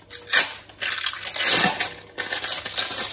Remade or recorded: recorded